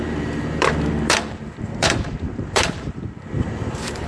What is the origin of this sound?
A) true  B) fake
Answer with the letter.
B